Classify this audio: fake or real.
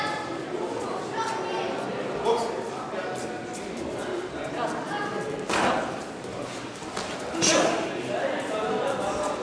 real